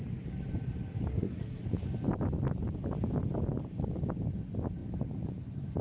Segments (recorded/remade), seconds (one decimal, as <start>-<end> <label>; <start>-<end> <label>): 0.0-1.1 recorded; 1.1-1.6 remade; 1.6-5.8 recorded